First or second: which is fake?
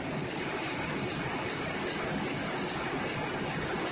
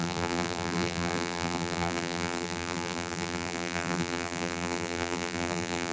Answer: second